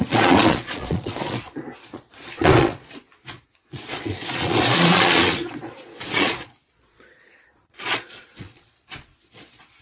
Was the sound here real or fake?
fake